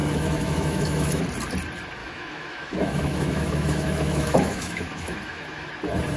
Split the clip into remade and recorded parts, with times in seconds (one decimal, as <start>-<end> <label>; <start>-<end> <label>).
0.0-1.2 remade; 1.2-2.0 recorded; 2.0-5.7 remade; 5.7-6.2 recorded